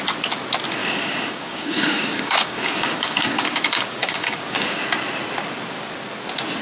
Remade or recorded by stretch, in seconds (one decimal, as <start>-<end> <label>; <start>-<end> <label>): 0.0-0.8 recorded; 0.8-4.8 remade; 4.8-6.6 recorded